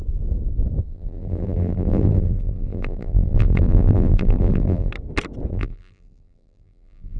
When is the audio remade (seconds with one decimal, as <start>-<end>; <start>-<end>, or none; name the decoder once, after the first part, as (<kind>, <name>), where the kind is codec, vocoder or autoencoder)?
0.9-4.9 (vocoder, BigVGAN v2); 5.5-7.2